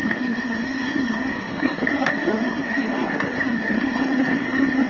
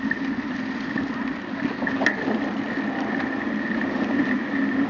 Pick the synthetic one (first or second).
first